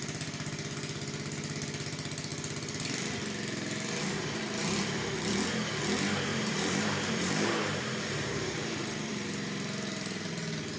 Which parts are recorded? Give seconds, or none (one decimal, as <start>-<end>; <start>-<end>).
0.0-6.3; 10.3-10.8